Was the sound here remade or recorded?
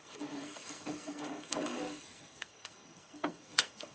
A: remade